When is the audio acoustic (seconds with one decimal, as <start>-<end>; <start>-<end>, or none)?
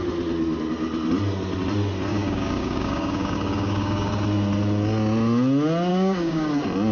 0.0-2.1; 4.1-5.9; 6.5-6.9